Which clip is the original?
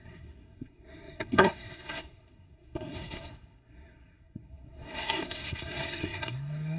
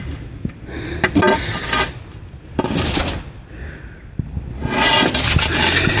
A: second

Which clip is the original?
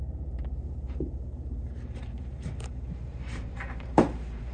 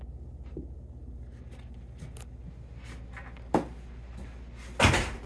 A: second